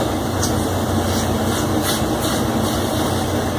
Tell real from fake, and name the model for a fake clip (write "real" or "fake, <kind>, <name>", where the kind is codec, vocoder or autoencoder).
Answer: real